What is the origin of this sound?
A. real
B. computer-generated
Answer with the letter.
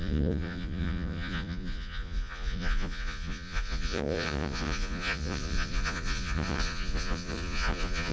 B